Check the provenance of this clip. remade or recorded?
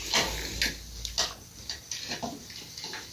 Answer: recorded